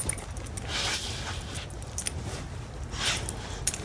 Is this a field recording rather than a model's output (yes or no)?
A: yes